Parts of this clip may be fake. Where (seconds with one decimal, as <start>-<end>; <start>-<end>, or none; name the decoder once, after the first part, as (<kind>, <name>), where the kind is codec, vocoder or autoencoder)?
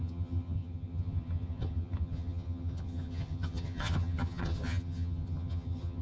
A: 0.0-6.0 (vocoder, HiFi-GAN)